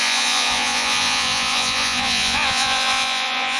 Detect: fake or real fake